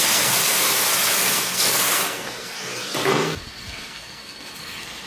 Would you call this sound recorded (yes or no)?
no